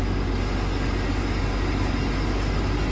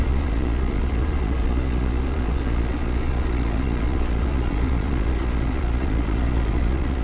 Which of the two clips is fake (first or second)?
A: second